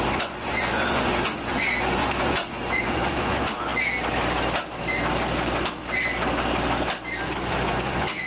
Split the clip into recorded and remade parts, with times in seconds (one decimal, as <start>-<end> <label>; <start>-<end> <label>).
0.0-3.7 remade; 3.7-7.2 recorded; 7.2-8.3 remade